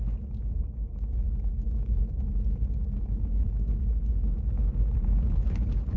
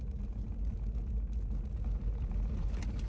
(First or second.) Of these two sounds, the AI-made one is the first